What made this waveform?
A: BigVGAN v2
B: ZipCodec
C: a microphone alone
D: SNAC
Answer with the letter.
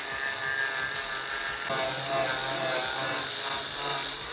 C